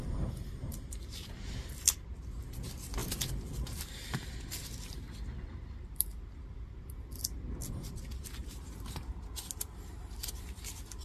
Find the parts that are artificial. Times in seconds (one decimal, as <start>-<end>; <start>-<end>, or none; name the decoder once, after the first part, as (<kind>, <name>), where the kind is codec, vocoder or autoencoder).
8.4-9.3 (vocoder, BigVGAN v2)